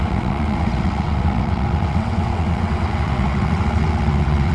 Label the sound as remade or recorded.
remade